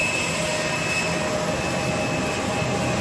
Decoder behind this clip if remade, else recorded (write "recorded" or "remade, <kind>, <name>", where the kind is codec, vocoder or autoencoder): recorded